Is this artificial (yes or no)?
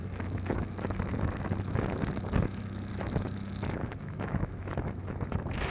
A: yes